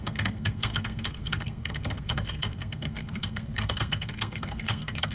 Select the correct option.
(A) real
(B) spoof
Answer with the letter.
B